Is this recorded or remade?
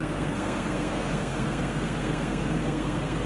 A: remade